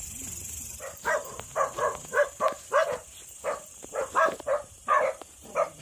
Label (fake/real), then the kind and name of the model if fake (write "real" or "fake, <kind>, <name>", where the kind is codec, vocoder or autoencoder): fake, vocoder, BigVGAN v2